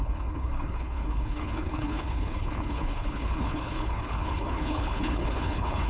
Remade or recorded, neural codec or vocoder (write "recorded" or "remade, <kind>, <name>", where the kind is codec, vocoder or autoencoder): remade, codec, HILCodec